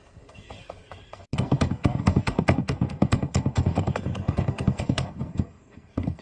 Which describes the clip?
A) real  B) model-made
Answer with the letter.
B